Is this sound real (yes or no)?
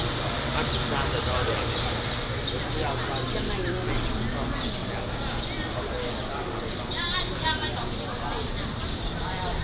yes